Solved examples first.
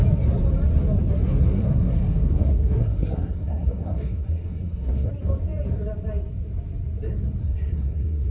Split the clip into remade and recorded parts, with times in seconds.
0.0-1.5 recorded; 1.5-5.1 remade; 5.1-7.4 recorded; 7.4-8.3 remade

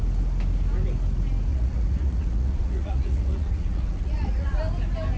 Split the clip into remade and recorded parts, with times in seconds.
0.0-1.5 recorded; 1.5-4.6 remade; 4.6-5.2 recorded

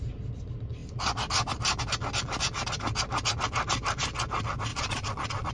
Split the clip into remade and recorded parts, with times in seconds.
0.0-4.7 recorded; 4.7-5.5 remade

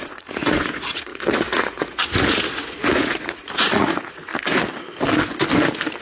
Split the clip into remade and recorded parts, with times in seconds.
0.0-4.3 remade; 4.3-6.0 recorded